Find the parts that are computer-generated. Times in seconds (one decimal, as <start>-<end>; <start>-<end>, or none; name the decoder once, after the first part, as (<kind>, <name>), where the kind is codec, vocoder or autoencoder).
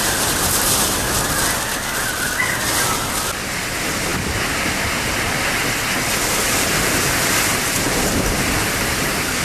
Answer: 7.5-8.1 (vocoder, BigVGAN v2)